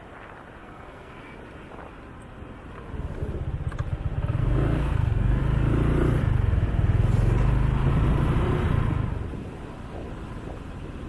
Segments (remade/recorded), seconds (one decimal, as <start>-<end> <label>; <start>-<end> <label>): 0.0-0.6 recorded; 0.6-1.3 remade; 1.3-4.4 recorded; 4.4-5.4 remade; 5.4-11.1 recorded